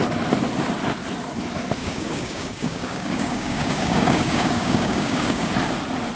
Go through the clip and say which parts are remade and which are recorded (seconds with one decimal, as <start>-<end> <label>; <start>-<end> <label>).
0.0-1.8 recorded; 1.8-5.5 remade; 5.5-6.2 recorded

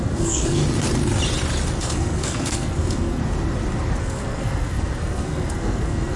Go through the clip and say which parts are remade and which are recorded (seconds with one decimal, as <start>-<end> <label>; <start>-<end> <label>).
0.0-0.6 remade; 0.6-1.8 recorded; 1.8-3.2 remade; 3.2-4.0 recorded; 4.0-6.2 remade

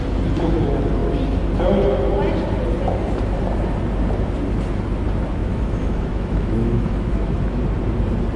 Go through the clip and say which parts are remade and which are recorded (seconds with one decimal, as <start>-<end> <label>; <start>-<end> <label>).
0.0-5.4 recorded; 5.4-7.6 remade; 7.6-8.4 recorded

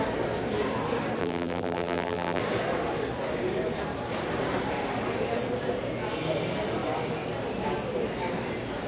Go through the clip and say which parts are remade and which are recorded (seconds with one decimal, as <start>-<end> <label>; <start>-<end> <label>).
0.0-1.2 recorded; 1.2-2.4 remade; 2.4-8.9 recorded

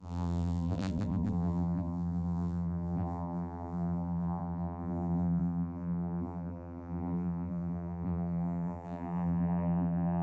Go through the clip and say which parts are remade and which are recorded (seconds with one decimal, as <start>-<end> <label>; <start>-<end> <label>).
0.0-10.2 remade

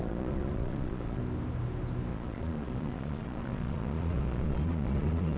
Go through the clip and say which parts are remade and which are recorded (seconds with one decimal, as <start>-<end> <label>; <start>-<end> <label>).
0.0-1.2 remade; 1.2-2.1 recorded; 2.1-5.4 remade